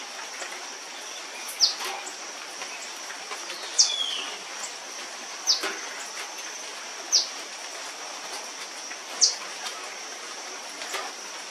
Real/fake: real